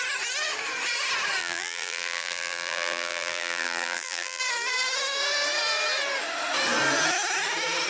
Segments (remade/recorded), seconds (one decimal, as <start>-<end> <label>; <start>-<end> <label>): 0.0-1.4 recorded; 1.4-4.4 remade; 4.4-7.9 recorded